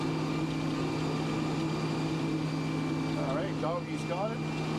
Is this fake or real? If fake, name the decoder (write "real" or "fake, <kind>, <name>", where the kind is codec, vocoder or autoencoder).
real